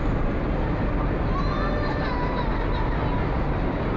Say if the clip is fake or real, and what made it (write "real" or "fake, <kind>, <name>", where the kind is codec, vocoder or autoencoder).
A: real